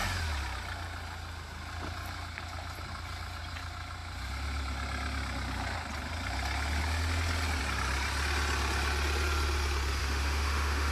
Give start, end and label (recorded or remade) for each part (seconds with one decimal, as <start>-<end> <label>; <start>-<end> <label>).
0.0-10.0 recorded; 10.0-10.9 remade